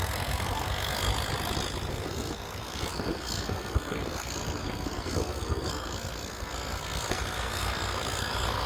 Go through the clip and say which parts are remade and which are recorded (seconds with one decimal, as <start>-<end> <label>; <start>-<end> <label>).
0.0-1.1 remade; 1.1-1.9 recorded; 1.9-8.7 remade